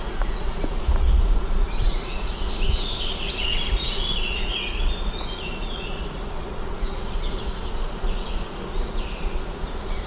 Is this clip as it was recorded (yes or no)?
no